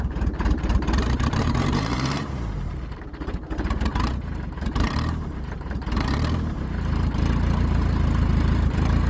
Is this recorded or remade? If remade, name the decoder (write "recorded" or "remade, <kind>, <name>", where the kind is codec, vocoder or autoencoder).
remade, vocoder, BigVGAN v2